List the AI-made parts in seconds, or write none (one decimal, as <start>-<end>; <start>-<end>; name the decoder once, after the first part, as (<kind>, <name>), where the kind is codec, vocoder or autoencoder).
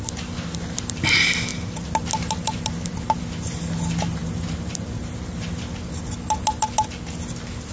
4.2-5.6 (vocoder, BigVGAN v2)